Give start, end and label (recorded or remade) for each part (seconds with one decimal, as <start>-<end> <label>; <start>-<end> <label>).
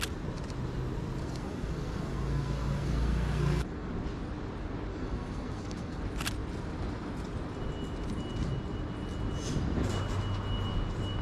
0.0-1.2 recorded; 1.2-3.9 remade; 3.9-4.9 recorded; 4.9-6.0 remade; 6.0-11.2 recorded